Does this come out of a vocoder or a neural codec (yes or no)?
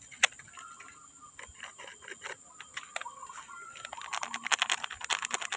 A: no